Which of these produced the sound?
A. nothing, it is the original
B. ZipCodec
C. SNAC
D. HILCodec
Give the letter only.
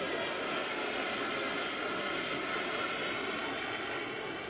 A